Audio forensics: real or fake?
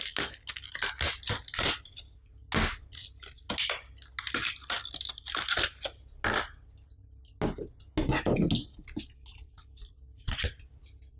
real